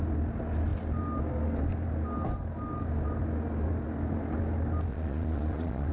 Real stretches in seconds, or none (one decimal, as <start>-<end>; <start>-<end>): 0.0-4.9